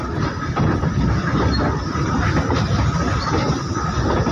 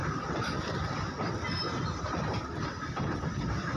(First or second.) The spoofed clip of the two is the second